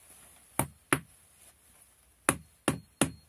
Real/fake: real